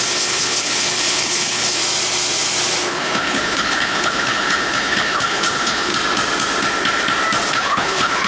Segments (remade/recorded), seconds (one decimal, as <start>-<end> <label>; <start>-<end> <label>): 0.0-1.8 remade; 1.8-2.9 recorded; 2.9-5.9 remade; 5.9-7.5 recorded; 7.5-8.3 remade